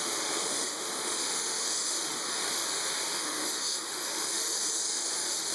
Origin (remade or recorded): remade